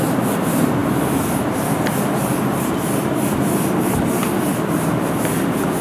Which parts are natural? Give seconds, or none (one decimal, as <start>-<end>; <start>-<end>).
0.0-5.8